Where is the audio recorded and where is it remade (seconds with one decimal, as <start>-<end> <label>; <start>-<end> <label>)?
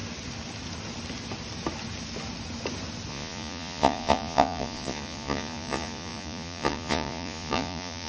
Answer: 0.0-3.1 recorded; 3.1-8.1 remade